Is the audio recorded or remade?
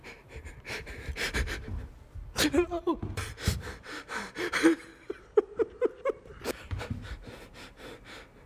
remade